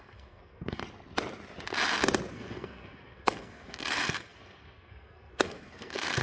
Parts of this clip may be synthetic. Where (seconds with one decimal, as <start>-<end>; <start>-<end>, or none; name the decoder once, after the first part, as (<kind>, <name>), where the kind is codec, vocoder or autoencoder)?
0.0-0.8 (codec, SNAC); 2.3-6.2